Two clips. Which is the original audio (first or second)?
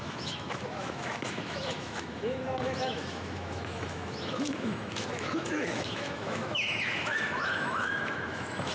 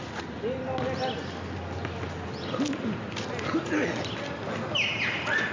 second